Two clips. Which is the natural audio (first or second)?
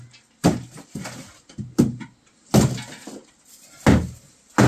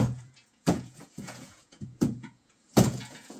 first